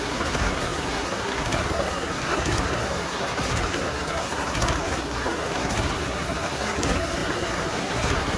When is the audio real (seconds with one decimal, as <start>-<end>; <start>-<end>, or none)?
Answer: none